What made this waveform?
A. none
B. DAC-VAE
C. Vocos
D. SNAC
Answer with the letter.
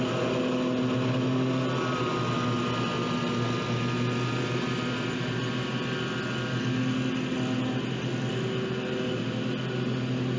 A